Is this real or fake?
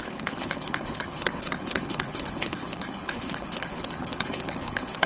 fake